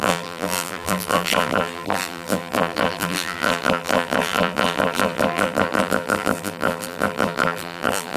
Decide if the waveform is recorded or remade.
remade